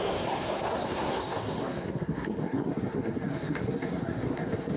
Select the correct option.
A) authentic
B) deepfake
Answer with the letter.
B